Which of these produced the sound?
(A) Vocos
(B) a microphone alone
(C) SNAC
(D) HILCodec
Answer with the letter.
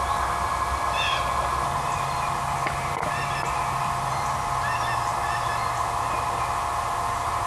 B